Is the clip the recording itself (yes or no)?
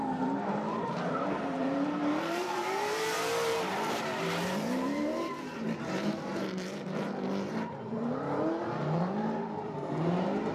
no